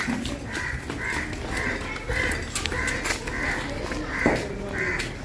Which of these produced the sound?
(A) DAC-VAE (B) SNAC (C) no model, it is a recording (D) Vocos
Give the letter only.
C